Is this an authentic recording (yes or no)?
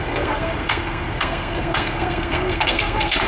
no